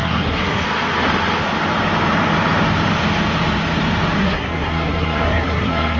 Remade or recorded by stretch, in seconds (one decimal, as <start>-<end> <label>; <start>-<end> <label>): 0.0-0.6 remade; 0.6-4.2 recorded; 4.2-6.0 remade